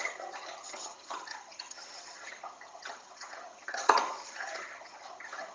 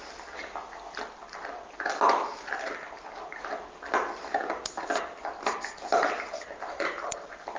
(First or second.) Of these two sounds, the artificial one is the first